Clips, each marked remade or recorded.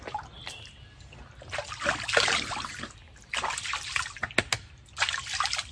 recorded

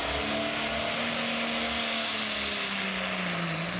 recorded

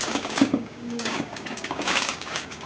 remade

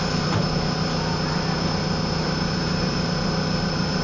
remade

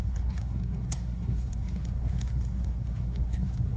remade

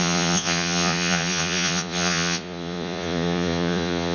remade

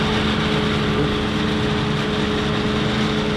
recorded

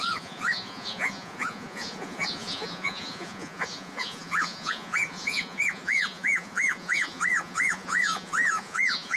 remade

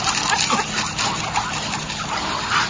recorded